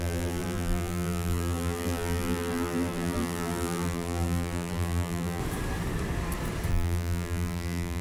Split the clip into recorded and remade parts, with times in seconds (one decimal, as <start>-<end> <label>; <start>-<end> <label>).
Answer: 0.0-5.4 remade; 5.4-6.7 recorded; 6.7-8.0 remade